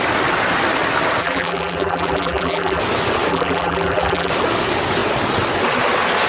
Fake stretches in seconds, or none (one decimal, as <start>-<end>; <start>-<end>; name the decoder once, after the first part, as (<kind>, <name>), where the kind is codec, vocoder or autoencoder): 1.2-2.8 (vocoder, BigVGAN v2); 3.3-4.3